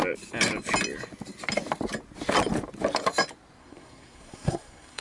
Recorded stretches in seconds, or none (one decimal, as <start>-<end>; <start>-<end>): 0.0-3.6